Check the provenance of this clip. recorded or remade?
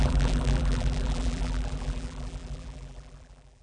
remade